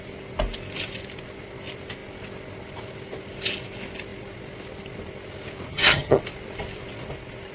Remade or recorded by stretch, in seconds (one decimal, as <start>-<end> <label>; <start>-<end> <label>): 0.0-5.7 recorded; 5.7-6.2 remade; 6.2-7.5 recorded